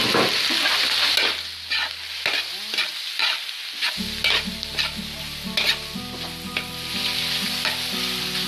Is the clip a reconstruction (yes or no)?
no